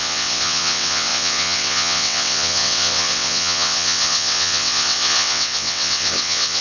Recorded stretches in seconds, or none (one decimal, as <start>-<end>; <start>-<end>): none